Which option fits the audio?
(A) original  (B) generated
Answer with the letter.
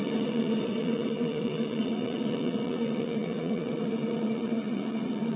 B